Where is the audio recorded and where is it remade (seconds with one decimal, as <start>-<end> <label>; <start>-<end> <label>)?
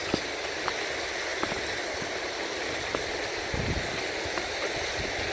0.0-5.3 recorded